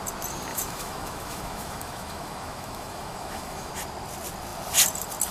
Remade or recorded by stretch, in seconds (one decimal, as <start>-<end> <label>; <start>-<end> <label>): 0.0-0.5 recorded; 0.5-3.7 remade; 3.7-5.3 recorded